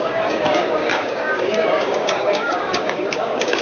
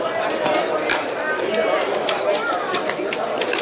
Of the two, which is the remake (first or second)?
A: first